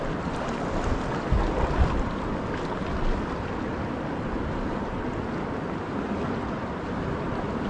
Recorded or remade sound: recorded